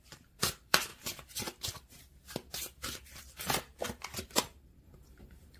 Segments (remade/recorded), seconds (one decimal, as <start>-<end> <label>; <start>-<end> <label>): 0.0-0.9 remade; 0.9-4.0 recorded; 4.0-5.6 remade